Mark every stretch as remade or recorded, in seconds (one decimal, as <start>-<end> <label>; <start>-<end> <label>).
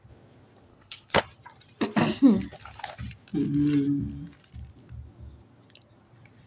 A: 0.0-0.7 recorded; 0.7-1.2 remade; 1.2-6.5 recorded